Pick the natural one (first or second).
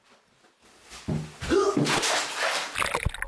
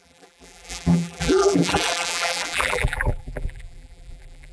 first